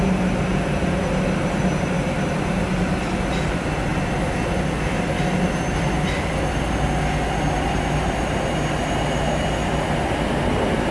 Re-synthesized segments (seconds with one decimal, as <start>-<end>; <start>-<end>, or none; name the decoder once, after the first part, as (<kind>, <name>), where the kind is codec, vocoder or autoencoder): none